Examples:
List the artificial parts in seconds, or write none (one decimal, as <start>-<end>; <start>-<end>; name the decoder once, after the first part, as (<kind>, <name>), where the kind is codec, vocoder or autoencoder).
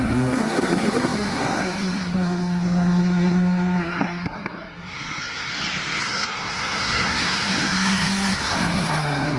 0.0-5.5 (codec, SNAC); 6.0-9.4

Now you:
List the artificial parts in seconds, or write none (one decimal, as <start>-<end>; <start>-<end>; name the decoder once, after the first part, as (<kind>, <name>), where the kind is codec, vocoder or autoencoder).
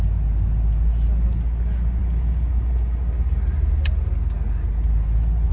none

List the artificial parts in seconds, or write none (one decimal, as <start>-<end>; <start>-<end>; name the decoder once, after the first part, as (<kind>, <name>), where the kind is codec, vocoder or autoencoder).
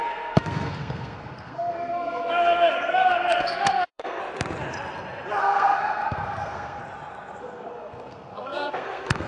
0.0-4.2 (codec, SNAC); 5.4-6.8; 7.4-9.3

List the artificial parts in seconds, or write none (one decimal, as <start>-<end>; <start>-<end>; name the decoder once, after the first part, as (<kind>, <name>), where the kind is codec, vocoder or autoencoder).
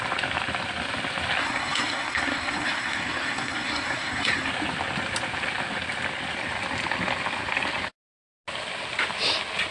1.4-4.5 (codec, SNAC)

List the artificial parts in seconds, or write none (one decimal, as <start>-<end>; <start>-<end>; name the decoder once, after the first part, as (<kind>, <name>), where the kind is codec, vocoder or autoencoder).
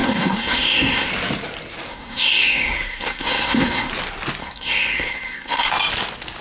0.0-1.1 (codec, SNAC); 1.9-3.9; 4.4-5.7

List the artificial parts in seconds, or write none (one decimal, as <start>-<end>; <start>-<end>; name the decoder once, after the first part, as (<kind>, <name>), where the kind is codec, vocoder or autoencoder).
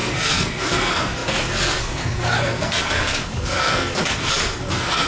0.0-5.1 (codec, SNAC)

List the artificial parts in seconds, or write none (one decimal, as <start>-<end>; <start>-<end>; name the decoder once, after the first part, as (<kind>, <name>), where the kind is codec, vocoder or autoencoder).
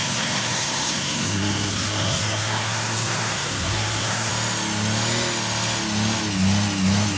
0.0-4.3 (codec, SNAC)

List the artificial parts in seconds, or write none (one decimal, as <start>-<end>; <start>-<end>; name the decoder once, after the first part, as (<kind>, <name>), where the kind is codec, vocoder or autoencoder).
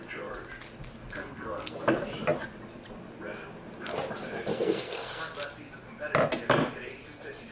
1.2-1.8 (codec, SNAC); 4.5-5.2